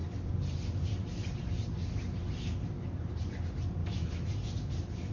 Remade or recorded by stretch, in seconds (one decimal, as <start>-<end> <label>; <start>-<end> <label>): 0.0-3.8 recorded; 3.8-4.3 remade; 4.3-5.1 recorded